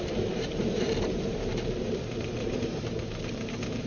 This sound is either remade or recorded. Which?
remade